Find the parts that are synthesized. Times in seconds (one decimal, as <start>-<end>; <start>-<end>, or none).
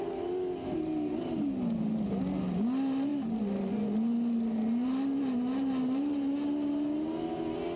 none